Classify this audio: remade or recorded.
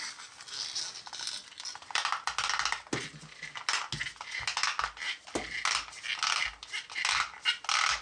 recorded